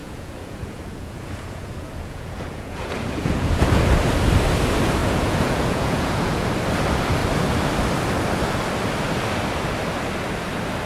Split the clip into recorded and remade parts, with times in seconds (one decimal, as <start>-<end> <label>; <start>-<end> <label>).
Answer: 0.0-3.8 remade; 3.8-5.0 recorded; 5.0-6.5 remade; 6.5-10.9 recorded